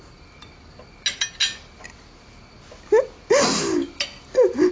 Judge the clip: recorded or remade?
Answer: recorded